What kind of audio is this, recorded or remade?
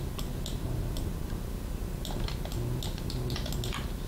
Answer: recorded